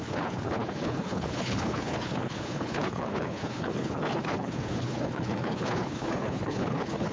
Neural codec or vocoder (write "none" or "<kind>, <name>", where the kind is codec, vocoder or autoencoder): codec, HILCodec